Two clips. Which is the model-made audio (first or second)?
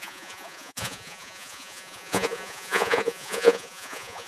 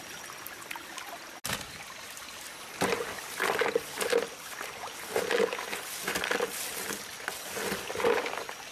first